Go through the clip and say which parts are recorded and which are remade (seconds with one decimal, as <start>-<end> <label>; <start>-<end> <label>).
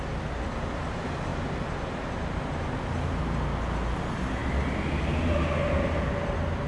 0.0-6.7 recorded